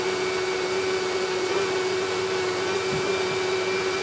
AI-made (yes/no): no